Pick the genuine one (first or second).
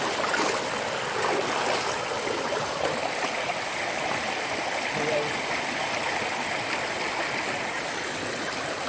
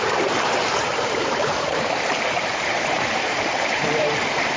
first